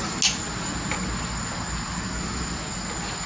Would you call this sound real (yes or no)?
yes